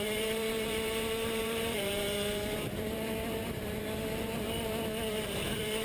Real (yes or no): no